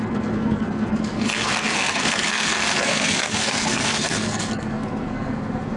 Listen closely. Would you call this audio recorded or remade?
remade